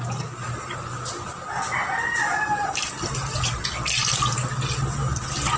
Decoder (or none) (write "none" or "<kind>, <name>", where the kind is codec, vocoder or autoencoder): none